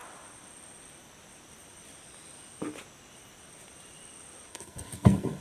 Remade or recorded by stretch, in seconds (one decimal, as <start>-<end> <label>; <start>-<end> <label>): 0.0-4.5 recorded; 4.5-5.4 remade